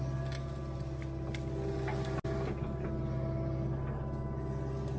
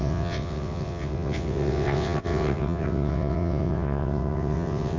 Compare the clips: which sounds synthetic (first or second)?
second